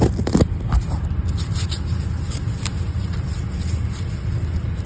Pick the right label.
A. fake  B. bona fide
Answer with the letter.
B